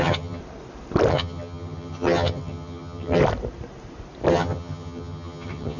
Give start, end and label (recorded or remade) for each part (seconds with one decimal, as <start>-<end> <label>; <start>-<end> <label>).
0.0-0.4 remade; 0.4-1.1 recorded; 1.1-3.2 remade; 3.2-4.3 recorded; 4.3-5.8 remade